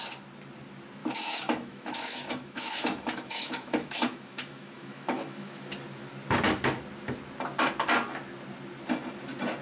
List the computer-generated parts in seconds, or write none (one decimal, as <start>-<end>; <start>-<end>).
1.0-5.7